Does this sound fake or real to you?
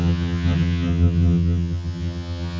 fake